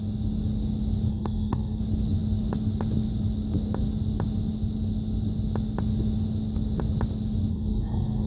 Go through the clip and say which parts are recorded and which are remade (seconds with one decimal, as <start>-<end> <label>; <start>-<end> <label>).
0.0-1.1 recorded; 1.1-1.8 remade; 1.8-7.5 recorded; 7.5-8.3 remade